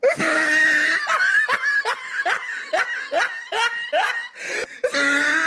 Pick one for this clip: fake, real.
real